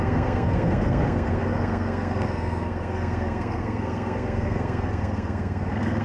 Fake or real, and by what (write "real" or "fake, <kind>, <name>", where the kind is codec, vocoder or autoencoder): fake, codec, SNAC